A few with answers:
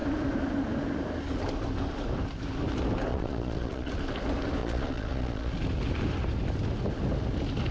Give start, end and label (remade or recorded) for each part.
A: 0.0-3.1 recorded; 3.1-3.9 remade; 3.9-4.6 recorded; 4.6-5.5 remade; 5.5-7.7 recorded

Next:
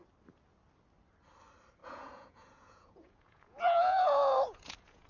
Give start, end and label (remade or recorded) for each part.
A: 0.0-1.8 recorded; 1.8-5.1 remade